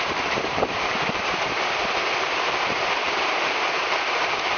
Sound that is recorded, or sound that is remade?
remade